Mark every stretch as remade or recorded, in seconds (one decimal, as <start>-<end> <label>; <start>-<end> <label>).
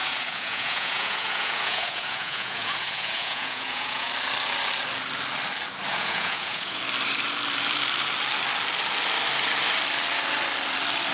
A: 0.0-4.1 remade; 4.1-5.9 recorded; 5.9-6.8 remade; 6.8-11.1 recorded